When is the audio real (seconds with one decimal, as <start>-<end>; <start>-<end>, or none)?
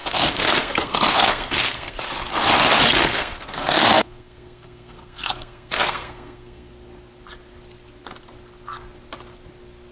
2.0-3.1; 6.7-9.9